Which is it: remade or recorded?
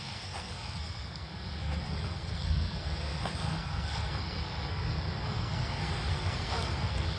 remade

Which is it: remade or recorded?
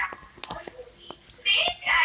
recorded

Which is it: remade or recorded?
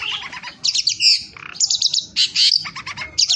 recorded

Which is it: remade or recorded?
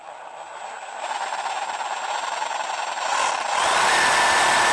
recorded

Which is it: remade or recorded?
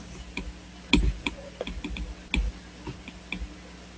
recorded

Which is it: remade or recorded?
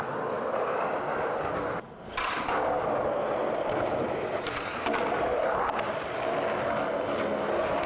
recorded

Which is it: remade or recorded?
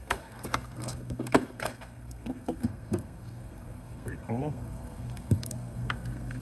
remade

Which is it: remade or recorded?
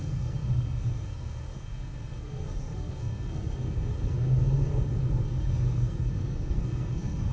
remade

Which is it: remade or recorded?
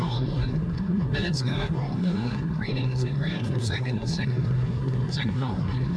remade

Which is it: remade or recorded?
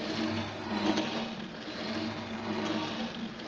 recorded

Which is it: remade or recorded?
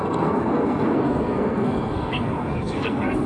remade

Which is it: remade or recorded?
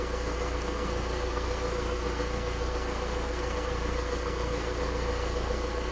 remade